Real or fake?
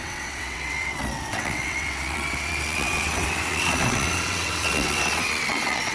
fake